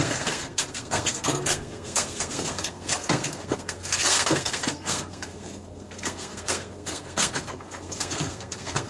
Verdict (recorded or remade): remade